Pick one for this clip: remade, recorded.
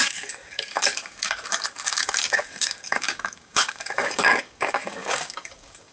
remade